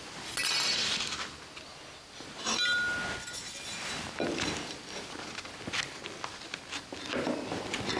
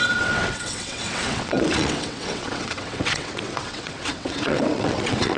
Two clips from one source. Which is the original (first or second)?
first